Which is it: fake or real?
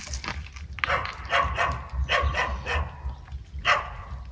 real